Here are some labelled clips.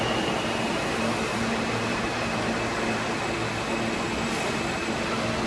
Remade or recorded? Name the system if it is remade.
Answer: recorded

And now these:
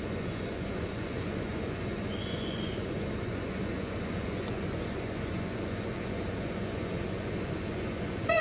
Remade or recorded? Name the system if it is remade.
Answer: remade, vocoder, Vocos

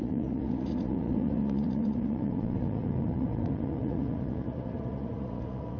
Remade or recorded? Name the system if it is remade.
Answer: remade, vocoder, Vocos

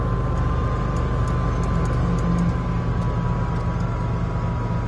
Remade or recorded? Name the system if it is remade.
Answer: recorded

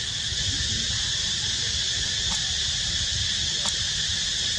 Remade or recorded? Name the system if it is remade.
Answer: recorded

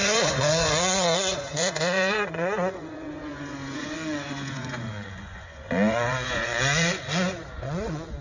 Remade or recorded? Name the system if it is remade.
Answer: remade, vocoder, Vocos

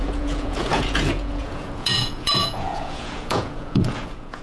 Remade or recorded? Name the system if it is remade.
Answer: remade, vocoder, Vocos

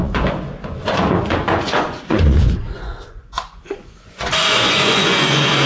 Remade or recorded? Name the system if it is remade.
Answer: remade, vocoder, Vocos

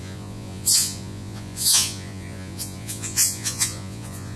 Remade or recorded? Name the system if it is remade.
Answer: remade, vocoder, Vocos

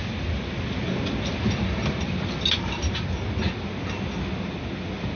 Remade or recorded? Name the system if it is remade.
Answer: recorded